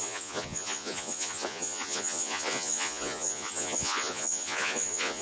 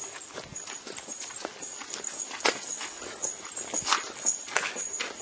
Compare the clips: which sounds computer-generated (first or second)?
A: first